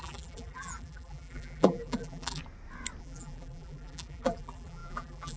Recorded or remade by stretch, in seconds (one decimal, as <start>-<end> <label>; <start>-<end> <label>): 0.0-2.4 remade; 2.4-3.0 recorded; 3.0-5.4 remade

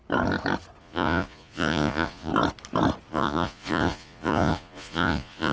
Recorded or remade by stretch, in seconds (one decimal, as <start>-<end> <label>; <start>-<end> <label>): 0.0-0.8 recorded; 0.8-2.3 remade; 2.3-3.1 recorded; 3.1-5.5 remade

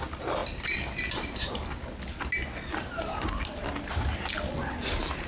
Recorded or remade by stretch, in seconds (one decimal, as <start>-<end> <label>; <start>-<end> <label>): 0.0-5.3 recorded